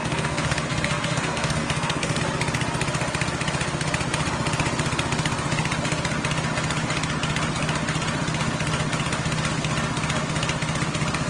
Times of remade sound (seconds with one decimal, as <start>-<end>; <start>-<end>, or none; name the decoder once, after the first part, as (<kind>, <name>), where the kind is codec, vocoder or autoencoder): 0.0-2.2 (codec, SNAC)